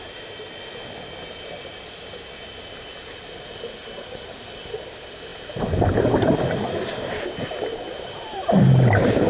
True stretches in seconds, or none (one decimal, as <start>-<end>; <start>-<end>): 0.0-5.3; 7.3-7.7